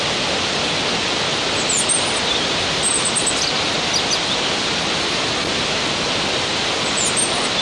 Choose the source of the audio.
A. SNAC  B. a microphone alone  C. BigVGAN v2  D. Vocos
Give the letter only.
B